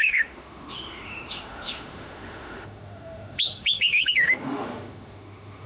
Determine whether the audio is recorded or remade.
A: remade